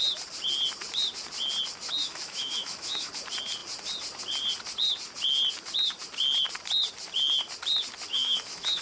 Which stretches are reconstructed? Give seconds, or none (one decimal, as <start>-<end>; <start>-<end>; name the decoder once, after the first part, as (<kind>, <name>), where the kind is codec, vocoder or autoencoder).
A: 2.0-3.1 (autoencoder, DAC-VAE); 8.1-8.8